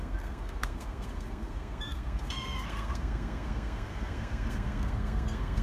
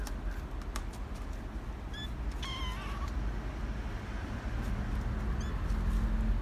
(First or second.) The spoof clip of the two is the first